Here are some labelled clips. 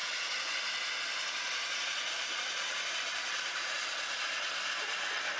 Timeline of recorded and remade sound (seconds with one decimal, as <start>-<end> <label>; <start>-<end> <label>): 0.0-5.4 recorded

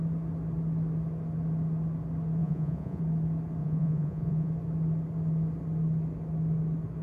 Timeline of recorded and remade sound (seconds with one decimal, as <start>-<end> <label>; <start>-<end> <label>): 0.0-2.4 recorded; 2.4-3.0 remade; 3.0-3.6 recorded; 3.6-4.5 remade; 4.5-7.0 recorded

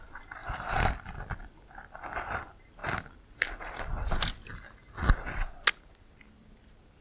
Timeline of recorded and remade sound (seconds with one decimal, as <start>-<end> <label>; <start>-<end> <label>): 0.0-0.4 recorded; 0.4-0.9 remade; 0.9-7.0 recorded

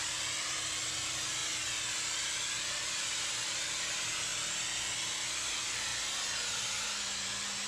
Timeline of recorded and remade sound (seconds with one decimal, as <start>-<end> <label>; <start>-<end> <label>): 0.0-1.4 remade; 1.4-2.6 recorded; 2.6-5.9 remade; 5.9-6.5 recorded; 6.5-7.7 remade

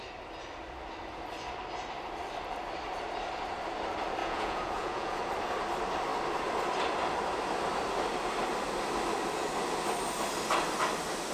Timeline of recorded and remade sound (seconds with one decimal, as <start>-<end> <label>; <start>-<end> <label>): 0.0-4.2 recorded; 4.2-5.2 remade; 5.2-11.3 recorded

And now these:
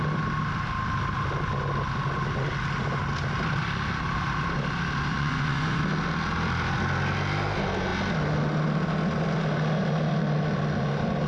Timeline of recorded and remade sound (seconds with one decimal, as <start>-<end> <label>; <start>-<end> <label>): 0.0-5.1 recorded; 5.1-5.8 remade; 5.8-11.3 recorded